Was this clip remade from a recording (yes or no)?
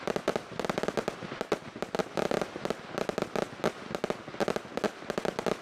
no